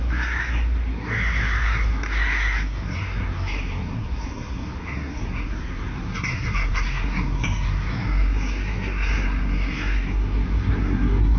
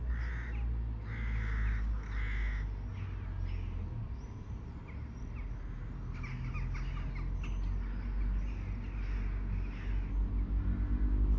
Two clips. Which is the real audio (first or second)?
second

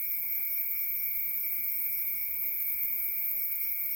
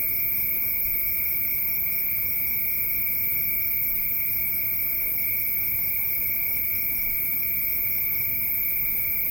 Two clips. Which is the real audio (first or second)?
second